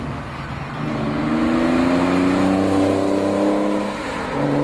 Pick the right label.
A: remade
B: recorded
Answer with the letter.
B